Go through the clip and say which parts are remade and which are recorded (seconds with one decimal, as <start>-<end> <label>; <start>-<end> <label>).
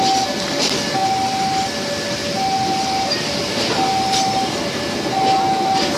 0.0-6.0 recorded